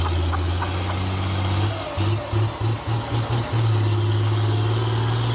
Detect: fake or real real